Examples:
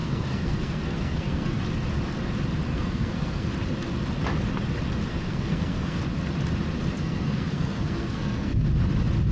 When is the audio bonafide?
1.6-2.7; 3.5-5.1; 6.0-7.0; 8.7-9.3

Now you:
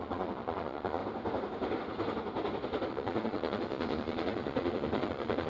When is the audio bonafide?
1.0-2.9

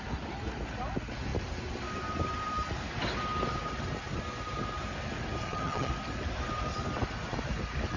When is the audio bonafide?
0.0-5.4; 5.9-8.0